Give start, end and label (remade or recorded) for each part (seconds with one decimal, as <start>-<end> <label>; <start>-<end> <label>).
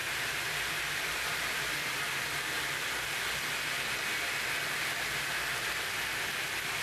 0.0-1.7 remade; 1.7-6.8 recorded